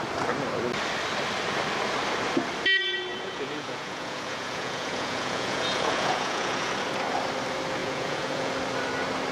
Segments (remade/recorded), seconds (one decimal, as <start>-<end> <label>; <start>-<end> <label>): 0.0-3.1 recorded; 3.1-6.7 remade; 6.7-7.8 recorded; 7.8-8.5 remade; 8.5-9.3 recorded